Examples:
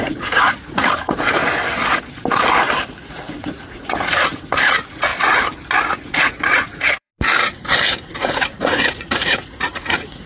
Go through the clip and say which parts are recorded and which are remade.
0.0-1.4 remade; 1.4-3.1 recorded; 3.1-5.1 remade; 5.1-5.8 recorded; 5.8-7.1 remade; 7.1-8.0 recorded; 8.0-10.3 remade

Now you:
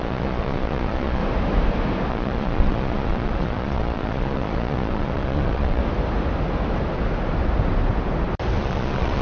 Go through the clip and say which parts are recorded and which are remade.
0.0-1.2 remade; 1.2-2.1 recorded; 2.1-5.8 remade; 5.8-8.6 recorded; 8.6-9.2 remade

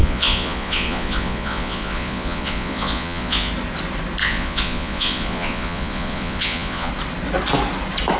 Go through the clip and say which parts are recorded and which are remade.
0.0-3.5 remade; 3.5-4.2 recorded; 4.2-6.9 remade; 6.9-8.2 recorded

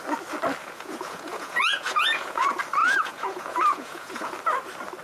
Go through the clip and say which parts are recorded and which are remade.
0.0-0.6 recorded; 0.6-2.4 remade; 2.4-2.8 recorded; 2.8-4.3 remade; 4.3-5.0 recorded

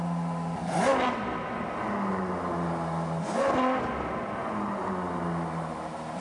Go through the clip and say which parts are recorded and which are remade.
0.0-6.2 recorded

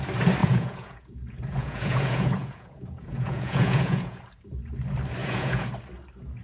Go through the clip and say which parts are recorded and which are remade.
0.0-0.4 recorded; 0.4-4.2 remade; 4.2-5.2 recorded; 5.2-5.7 remade; 5.7-6.4 recorded

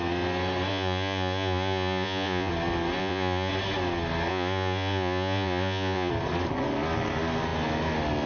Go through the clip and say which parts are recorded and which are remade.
0.0-0.7 recorded; 0.7-2.5 remade; 2.5-3.0 recorded; 3.0-3.5 remade; 3.5-4.3 recorded; 4.3-6.1 remade; 6.1-8.3 recorded